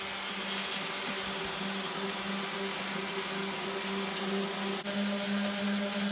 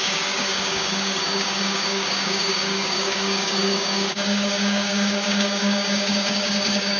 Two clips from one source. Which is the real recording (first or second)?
first